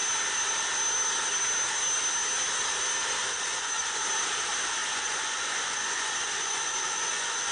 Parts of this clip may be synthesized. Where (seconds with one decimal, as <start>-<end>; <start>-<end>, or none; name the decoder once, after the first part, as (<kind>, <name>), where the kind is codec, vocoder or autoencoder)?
3.3-4.0 (vocoder, Vocos); 4.8-7.5